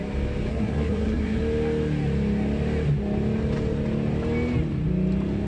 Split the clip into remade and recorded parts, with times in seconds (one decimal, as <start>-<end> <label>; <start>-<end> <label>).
0.0-0.5 recorded; 0.5-1.4 remade; 1.4-5.5 recorded